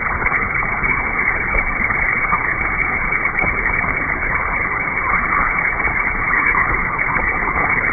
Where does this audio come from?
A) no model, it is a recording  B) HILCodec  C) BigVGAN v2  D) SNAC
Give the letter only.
B